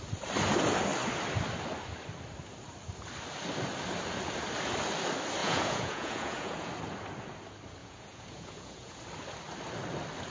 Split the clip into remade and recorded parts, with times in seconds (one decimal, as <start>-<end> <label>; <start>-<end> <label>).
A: 0.0-5.4 recorded; 5.4-6.7 remade; 6.7-7.8 recorded; 7.8-9.0 remade; 9.0-10.3 recorded